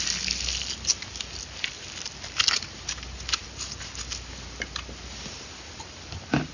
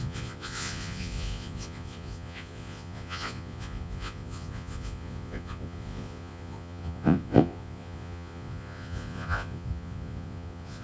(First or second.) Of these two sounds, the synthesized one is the second